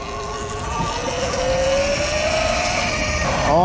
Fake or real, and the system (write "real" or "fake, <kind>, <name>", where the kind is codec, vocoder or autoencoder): real